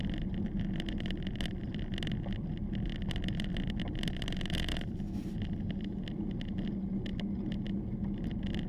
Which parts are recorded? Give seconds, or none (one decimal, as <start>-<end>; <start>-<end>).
0.0-8.7